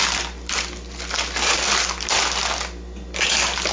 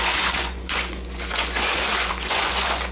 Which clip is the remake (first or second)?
second